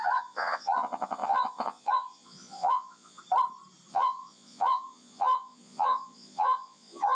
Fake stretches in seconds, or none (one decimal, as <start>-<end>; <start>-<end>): 0.0-3.2; 3.9-7.1

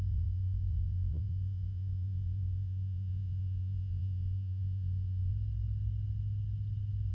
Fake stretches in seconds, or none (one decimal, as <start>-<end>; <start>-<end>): 0.0-5.3

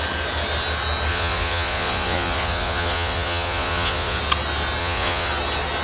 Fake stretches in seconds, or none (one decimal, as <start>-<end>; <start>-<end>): 1.1-4.2; 4.8-5.3

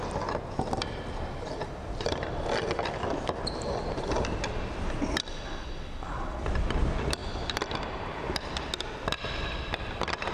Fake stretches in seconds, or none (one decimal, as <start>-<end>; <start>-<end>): none